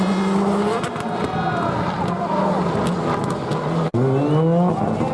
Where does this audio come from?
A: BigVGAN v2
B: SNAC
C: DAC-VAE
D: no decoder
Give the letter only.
D